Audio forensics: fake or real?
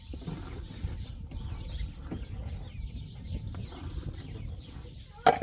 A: real